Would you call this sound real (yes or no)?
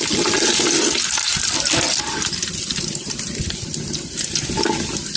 yes